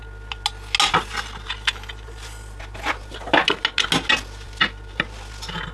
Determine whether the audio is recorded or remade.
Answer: recorded